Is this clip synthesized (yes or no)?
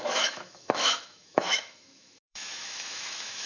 yes